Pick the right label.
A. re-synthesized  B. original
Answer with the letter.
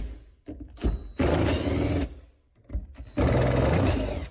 B